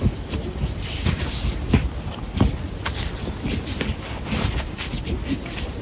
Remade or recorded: recorded